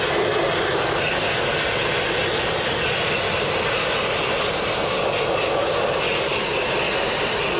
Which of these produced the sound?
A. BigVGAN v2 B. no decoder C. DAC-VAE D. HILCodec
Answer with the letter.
B